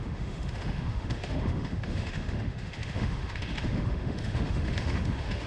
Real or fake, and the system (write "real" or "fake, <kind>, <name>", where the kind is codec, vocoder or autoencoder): fake, autoencoder, DAC-VAE